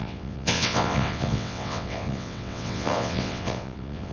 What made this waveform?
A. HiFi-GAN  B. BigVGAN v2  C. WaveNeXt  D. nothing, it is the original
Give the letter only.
C